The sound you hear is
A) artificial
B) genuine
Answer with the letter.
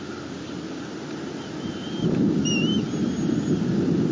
B